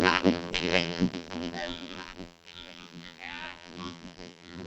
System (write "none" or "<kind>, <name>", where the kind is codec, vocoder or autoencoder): vocoder, BigVGAN v2